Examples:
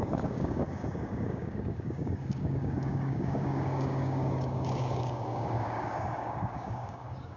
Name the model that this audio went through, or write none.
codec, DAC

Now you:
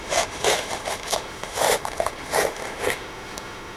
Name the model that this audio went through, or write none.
autoencoder, DAC-VAE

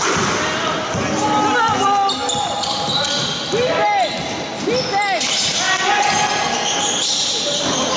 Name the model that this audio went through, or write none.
none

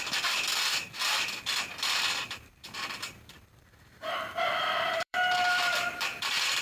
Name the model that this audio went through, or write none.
vocoder, BigVGAN v2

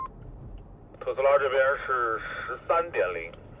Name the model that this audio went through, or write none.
none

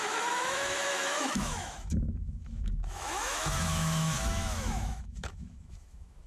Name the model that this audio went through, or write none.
autoencoder, DAC-VAE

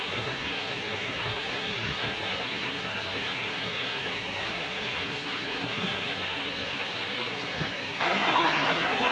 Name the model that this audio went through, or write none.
codec, SNAC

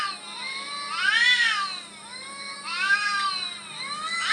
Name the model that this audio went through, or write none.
none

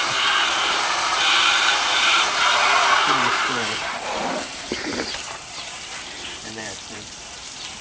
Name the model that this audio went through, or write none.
vocoder, BigVGAN v2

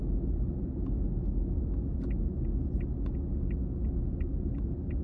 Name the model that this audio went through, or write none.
none